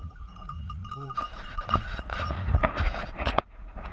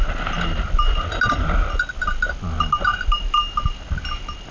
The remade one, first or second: first